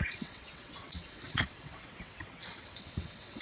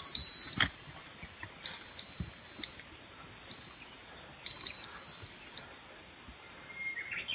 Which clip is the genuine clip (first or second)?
second